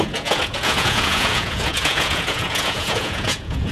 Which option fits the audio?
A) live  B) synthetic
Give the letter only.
B